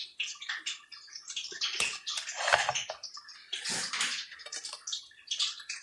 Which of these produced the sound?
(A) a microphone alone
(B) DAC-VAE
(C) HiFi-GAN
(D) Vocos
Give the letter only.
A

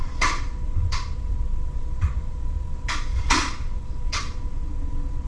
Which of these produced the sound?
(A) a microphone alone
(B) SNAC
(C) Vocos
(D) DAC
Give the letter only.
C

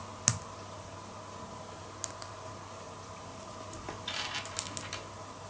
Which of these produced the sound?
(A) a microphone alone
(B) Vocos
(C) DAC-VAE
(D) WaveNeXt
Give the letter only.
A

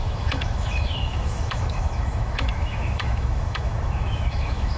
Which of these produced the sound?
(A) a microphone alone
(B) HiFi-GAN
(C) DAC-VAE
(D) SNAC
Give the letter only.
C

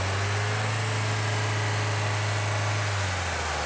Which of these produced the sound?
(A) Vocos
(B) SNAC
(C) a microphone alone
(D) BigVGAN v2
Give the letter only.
C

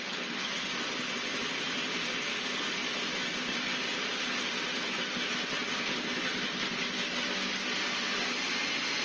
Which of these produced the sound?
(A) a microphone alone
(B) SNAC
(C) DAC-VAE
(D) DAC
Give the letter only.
A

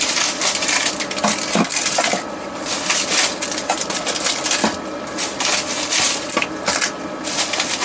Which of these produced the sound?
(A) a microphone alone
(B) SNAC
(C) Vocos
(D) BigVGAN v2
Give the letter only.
A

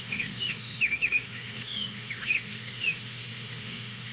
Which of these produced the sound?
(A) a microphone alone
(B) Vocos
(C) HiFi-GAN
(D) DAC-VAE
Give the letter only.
D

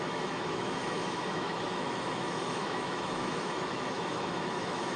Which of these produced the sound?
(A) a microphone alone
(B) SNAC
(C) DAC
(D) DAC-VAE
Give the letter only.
D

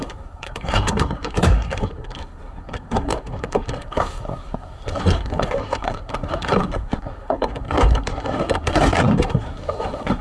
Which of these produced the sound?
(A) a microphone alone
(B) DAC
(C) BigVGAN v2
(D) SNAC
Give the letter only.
D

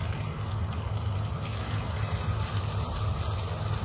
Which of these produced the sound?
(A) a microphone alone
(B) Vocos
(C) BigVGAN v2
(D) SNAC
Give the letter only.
A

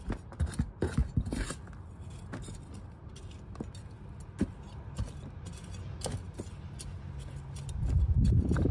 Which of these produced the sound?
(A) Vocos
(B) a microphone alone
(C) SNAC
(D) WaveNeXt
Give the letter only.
B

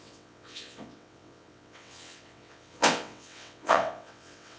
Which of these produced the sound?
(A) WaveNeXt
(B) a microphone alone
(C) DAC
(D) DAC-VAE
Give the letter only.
A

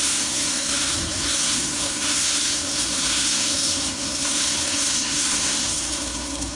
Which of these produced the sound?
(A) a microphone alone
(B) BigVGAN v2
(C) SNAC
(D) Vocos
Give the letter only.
C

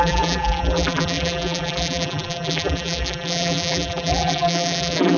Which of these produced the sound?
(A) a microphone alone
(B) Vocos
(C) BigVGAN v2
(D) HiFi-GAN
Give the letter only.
C